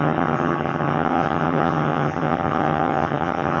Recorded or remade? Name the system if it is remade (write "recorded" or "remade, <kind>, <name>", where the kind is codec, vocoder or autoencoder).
remade, vocoder, HiFi-GAN